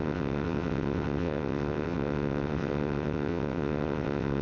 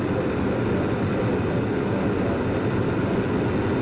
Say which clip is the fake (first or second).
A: first